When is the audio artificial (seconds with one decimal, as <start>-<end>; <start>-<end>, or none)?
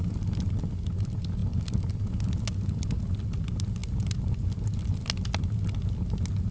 none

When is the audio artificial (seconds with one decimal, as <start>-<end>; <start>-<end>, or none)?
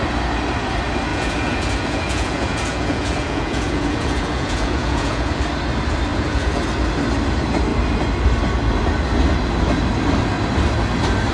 1.1-5.4; 6.1-6.6